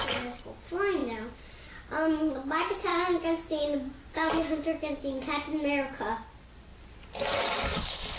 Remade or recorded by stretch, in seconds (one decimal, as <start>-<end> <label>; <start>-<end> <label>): 0.0-8.2 recorded